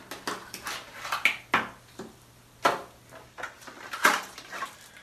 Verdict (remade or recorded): recorded